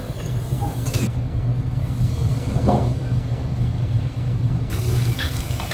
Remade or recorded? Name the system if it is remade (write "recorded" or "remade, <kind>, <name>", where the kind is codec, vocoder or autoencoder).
remade, codec, SNAC